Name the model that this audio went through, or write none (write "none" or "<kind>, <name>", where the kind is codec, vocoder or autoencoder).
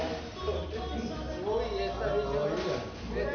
none